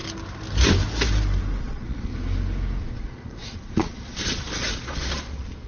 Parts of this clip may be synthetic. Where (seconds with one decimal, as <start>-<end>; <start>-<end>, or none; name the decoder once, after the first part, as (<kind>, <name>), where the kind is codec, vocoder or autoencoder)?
1.6-2.1 (vocoder, Vocos); 2.8-5.7